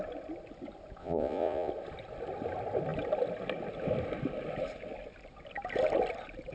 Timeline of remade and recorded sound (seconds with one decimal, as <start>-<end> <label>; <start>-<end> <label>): 0.0-1.0 recorded; 1.0-1.7 remade; 1.7-6.5 recorded